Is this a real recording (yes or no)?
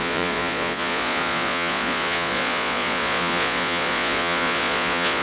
no